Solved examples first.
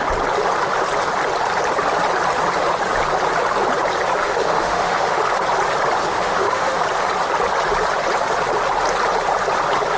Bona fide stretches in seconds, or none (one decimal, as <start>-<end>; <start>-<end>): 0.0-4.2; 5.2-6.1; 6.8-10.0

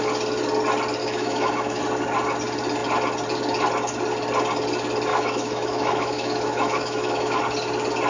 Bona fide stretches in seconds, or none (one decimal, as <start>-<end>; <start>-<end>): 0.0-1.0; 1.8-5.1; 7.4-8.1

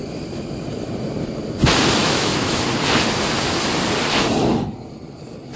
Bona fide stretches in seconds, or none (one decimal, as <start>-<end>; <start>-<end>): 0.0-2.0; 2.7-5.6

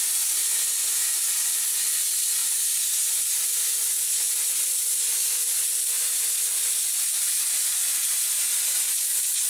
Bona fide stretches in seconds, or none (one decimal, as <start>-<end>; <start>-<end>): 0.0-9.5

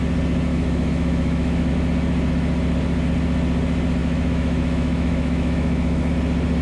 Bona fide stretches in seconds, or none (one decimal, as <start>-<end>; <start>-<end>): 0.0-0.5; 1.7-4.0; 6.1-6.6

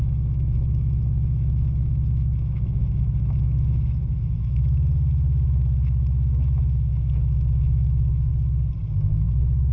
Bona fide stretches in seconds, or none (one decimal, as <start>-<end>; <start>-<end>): 8.3-8.9